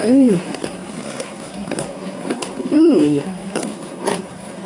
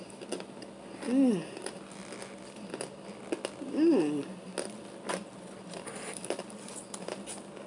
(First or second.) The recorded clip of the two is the second